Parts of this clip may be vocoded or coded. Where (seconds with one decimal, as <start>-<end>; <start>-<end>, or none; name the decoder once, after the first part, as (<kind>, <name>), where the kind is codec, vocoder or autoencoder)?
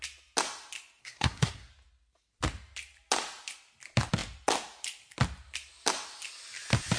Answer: 1.0-1.7 (codec, SNAC)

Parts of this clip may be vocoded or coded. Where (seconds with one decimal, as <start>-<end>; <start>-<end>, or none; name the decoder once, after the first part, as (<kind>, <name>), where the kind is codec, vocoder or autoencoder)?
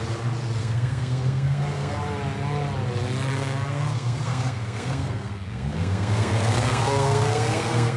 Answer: 0.6-1.9 (codec, SNAC); 3.3-8.0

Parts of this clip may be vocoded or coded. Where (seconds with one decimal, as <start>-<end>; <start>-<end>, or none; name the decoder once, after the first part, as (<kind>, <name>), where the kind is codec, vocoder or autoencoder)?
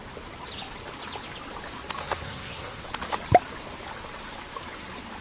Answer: 2.0-2.8 (codec, SNAC)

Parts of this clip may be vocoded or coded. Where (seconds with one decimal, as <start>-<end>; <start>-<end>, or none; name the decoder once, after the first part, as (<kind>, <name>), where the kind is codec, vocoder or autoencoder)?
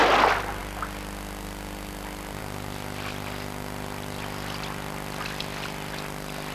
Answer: none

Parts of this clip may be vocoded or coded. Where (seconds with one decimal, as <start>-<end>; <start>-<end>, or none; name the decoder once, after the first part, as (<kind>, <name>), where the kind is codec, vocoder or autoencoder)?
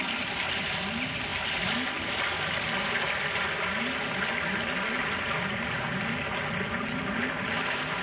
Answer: none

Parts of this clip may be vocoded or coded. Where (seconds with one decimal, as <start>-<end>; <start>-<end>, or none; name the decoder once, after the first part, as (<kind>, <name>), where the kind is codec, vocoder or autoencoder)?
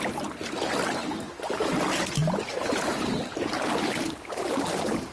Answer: none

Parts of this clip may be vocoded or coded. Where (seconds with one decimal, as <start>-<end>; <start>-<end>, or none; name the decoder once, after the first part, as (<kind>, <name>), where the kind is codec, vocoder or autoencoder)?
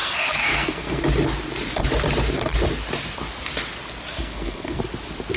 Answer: 0.0-1.0 (codec, SNAC); 4.1-4.8